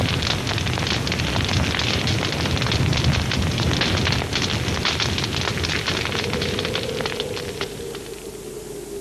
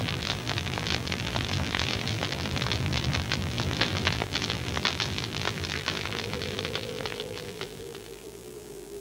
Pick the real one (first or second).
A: first